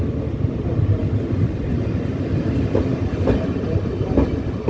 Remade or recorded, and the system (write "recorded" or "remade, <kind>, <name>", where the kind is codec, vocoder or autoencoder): recorded